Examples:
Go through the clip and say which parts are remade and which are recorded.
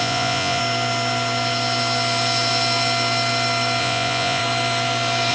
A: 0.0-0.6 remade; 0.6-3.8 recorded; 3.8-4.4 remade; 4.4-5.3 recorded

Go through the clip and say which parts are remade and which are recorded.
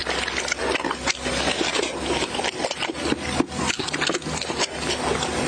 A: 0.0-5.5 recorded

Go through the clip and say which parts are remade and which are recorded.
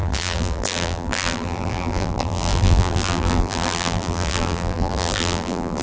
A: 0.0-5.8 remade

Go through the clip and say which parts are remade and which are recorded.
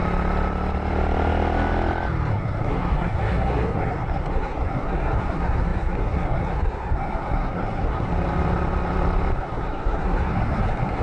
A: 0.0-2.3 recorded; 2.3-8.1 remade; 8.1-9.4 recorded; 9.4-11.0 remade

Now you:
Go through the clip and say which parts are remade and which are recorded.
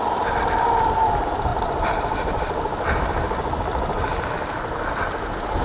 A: 0.0-5.6 recorded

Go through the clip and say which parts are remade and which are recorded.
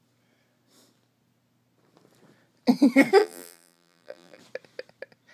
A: 0.0-3.2 recorded; 3.2-4.4 remade; 4.4-5.3 recorded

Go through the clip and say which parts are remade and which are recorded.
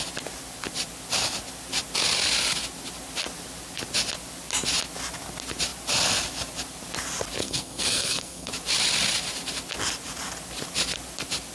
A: 0.0-7.4 recorded; 7.4-8.5 remade; 8.5-11.5 recorded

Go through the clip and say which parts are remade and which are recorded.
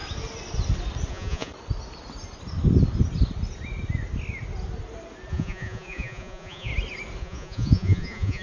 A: 0.0-1.1 recorded; 1.1-1.5 remade; 1.5-5.3 recorded; 5.3-6.7 remade; 6.7-7.2 recorded; 7.2-8.4 remade